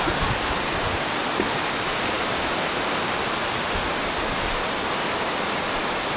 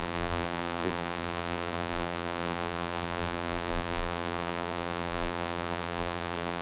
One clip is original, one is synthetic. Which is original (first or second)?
first